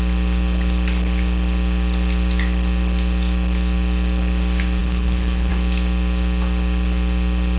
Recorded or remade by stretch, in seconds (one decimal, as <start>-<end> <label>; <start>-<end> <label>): 0.0-4.8 recorded; 4.8-5.5 remade; 5.5-7.6 recorded